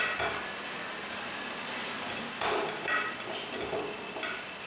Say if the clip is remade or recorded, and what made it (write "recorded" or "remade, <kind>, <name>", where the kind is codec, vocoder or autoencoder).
recorded